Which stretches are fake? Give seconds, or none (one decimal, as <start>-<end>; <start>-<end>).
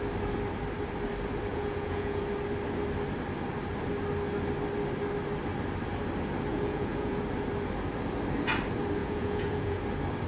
1.5-2.2; 6.5-7.2; 9.0-9.8